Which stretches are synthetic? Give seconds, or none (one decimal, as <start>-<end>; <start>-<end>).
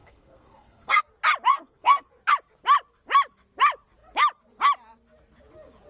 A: 0.0-1.0; 1.5-2.1